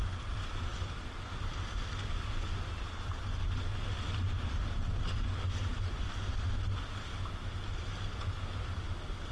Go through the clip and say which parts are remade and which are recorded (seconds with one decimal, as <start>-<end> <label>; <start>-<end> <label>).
0.0-0.7 recorded; 0.7-1.8 remade; 1.8-9.3 recorded